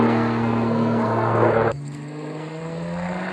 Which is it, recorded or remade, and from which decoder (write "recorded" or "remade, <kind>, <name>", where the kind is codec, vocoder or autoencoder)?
remade, codec, SNAC